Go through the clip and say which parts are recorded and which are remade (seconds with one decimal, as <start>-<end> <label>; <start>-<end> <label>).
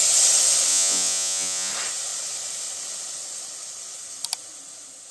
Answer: 0.0-0.7 recorded; 0.7-1.7 remade; 1.7-5.1 recorded